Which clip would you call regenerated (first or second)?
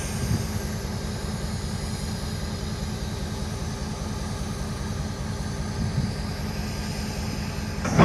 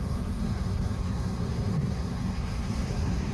second